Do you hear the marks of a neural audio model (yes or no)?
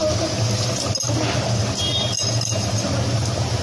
no